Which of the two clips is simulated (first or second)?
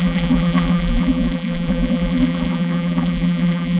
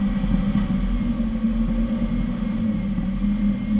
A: first